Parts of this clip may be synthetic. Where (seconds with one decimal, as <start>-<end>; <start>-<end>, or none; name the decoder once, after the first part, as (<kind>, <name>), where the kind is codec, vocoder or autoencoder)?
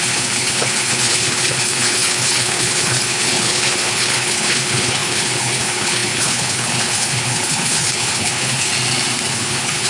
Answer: 0.0-8.7 (codec, HILCodec); 9.3-9.9